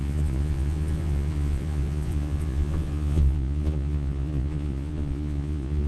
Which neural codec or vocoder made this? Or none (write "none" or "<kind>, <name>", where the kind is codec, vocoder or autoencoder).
vocoder, Vocos